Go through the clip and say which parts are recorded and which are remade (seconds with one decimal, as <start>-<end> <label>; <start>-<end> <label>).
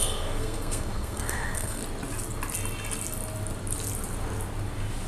0.0-1.8 remade; 1.8-5.1 recorded